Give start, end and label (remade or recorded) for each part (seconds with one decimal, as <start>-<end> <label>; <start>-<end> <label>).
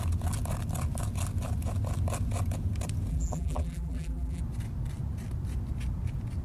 0.0-3.1 recorded; 3.1-4.4 remade; 4.4-6.4 recorded